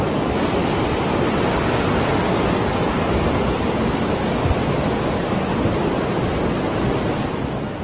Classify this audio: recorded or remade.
recorded